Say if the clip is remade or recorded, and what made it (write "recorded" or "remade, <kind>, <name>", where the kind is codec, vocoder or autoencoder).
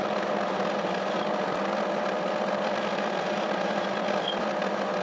remade, vocoder, BigVGAN v2